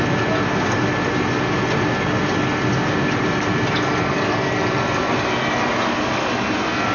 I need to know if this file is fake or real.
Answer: real